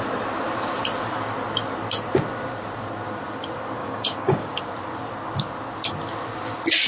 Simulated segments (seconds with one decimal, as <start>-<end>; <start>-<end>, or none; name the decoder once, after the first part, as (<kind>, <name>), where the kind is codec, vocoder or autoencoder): 3.8-4.6 (codec, DAC)

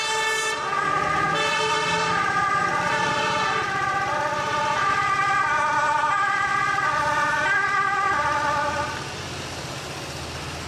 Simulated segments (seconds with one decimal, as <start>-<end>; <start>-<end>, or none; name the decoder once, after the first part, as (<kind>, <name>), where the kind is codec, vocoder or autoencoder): none

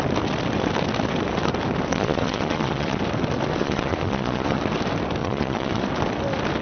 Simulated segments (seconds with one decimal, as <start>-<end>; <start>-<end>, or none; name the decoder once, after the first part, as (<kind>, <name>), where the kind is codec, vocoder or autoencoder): 1.9-3.0 (vocoder, Vocos); 3.6-4.6; 5.2-5.8

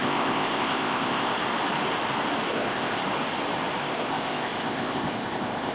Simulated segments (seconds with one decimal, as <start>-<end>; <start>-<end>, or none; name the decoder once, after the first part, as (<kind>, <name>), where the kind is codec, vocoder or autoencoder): 0.0-1.3 (codec, ZipCodec); 2.5-3.0; 3.8-5.7

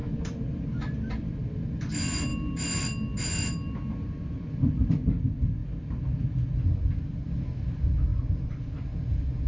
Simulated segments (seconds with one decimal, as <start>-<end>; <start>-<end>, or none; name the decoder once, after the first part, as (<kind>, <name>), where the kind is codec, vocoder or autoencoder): 0.0-1.9 (vocoder, BigVGAN v2); 8.1-9.0